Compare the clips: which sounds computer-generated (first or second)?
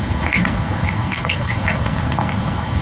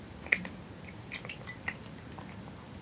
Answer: first